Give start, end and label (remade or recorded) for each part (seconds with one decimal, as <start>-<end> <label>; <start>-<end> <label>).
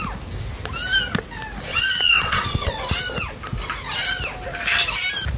0.0-1.7 recorded; 1.7-2.7 remade; 2.7-5.4 recorded